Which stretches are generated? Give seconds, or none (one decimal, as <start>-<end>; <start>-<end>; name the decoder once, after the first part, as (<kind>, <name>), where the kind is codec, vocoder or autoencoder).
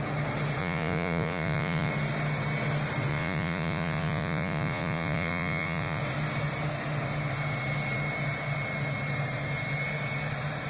0.6-1.9 (vocoder, Vocos); 3.1-6.0